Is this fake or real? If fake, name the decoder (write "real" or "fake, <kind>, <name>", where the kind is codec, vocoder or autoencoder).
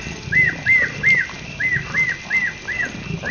real